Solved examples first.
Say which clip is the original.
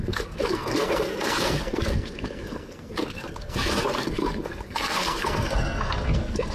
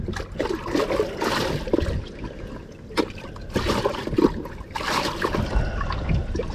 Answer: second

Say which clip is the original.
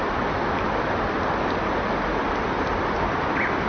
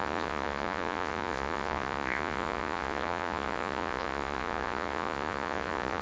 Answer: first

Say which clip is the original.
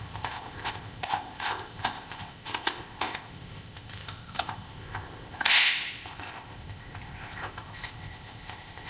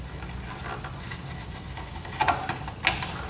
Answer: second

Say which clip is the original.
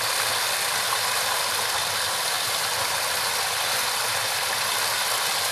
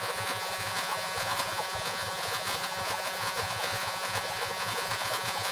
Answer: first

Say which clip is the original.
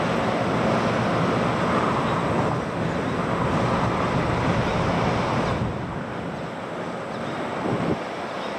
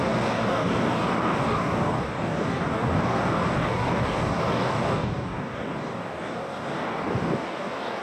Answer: first